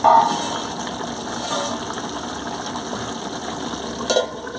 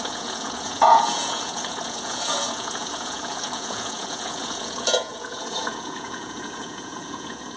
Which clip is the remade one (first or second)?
second